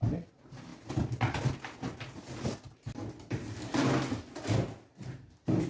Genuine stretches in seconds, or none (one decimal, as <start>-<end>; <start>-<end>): 0.0-5.7